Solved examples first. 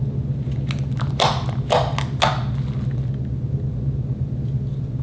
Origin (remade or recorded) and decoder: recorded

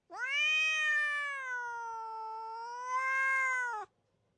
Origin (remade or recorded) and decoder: recorded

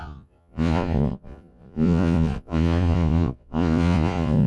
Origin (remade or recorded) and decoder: remade, vocoder, Vocos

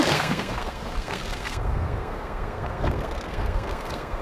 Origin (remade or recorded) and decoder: remade, codec, SNAC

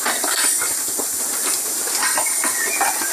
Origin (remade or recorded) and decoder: recorded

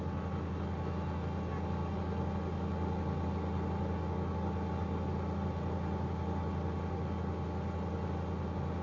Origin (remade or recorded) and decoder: recorded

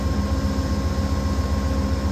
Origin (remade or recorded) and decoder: recorded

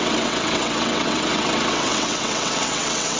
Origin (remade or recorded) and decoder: remade, vocoder, WaveNeXt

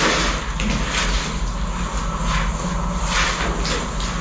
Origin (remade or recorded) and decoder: recorded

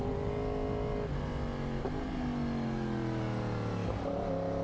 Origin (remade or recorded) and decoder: recorded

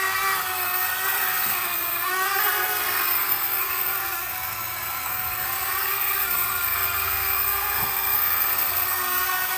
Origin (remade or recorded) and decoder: remade, codec, SNAC